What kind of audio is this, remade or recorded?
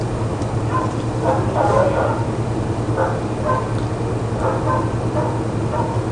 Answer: recorded